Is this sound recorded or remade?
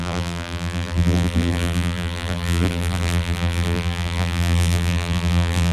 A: remade